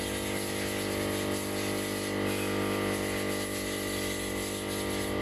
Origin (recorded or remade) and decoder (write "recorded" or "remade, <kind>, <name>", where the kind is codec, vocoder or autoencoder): recorded